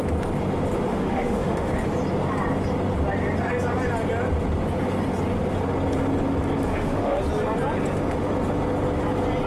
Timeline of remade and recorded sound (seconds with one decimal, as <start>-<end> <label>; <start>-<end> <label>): 0.0-0.9 recorded; 0.9-1.7 remade; 1.7-6.7 recorded; 6.7-7.2 remade; 7.2-9.5 recorded